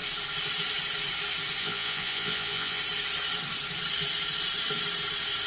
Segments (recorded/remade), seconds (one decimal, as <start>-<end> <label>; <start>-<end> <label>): 0.0-1.6 recorded; 1.6-2.8 remade; 2.8-5.5 recorded